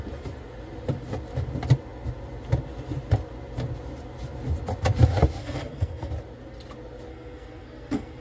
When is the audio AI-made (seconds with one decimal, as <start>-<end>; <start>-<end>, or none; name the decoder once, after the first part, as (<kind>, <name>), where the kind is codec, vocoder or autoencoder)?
5.4-6.1 (codec, SNAC); 7.1-8.2